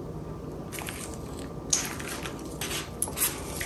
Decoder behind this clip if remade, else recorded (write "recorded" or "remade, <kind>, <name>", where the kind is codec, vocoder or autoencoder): recorded